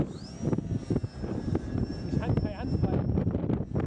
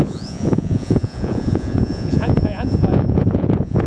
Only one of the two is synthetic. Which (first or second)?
second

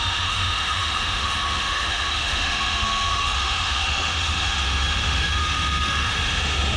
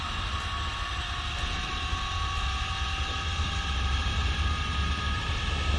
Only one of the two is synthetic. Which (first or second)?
first